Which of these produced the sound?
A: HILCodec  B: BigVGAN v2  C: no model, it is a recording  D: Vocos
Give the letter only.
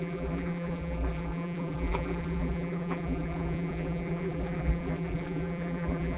B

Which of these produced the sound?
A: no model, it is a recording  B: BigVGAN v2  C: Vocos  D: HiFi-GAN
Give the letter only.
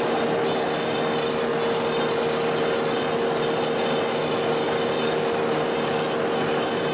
A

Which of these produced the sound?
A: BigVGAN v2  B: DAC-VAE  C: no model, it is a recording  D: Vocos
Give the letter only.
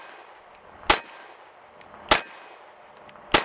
C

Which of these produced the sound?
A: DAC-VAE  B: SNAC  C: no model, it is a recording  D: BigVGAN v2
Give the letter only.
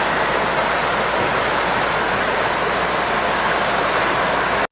C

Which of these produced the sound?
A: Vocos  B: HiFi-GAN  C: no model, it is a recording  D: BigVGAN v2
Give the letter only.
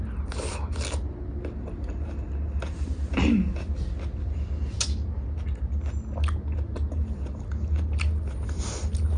C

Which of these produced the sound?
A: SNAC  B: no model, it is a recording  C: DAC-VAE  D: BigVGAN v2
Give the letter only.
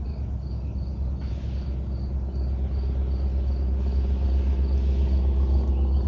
B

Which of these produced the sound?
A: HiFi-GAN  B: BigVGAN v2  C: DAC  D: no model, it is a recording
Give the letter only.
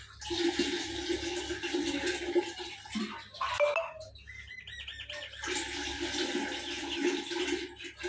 D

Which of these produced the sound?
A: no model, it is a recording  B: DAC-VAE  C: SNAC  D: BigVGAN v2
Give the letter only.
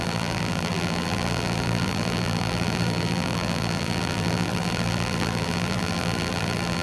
D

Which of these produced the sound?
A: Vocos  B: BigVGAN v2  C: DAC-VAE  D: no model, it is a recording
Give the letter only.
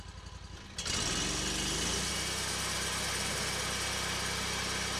D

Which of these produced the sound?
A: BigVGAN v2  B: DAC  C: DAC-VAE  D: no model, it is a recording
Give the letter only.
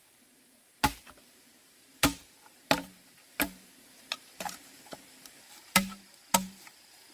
A